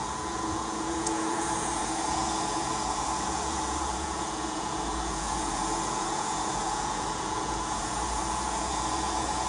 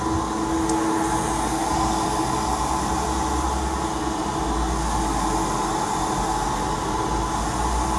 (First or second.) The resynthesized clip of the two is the first